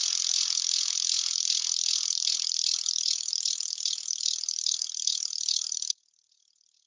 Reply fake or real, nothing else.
real